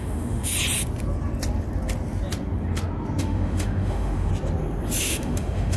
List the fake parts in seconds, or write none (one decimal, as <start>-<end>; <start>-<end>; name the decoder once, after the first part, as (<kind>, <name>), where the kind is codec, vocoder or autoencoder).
0.0-0.5 (autoencoder, DAC-VAE); 3.2-4.3; 5.0-5.8